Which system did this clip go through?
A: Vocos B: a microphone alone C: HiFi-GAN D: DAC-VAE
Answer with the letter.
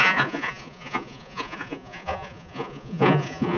A